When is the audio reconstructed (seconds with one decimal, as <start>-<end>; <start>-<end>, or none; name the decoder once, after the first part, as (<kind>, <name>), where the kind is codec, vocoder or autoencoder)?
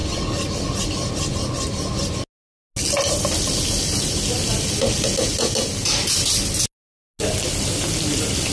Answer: none